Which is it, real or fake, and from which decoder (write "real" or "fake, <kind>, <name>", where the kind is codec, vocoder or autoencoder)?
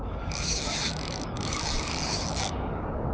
fake, codec, DAC